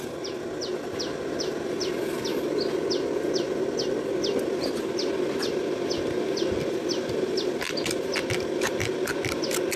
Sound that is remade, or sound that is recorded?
recorded